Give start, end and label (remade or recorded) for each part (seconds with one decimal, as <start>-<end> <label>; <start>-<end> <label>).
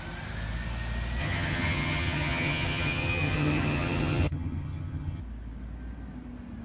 0.0-1.2 recorded; 1.2-5.2 remade; 5.2-6.6 recorded